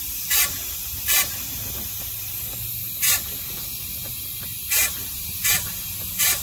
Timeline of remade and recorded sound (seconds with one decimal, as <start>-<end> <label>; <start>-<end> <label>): 0.0-4.6 recorded; 4.6-5.8 remade; 5.8-6.4 recorded